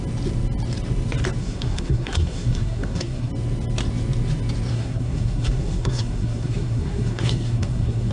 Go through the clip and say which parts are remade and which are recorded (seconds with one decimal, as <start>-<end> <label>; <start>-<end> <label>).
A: 0.0-1.4 recorded; 1.4-3.3 remade; 3.3-4.7 recorded; 4.7-8.1 remade

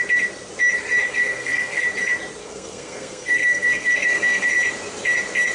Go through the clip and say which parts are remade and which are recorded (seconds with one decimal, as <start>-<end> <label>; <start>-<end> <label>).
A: 0.0-1.1 recorded; 1.1-1.8 remade; 1.8-2.4 recorded; 2.4-4.5 remade; 4.5-5.5 recorded